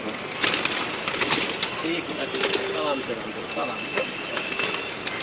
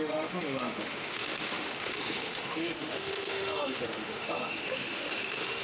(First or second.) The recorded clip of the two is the first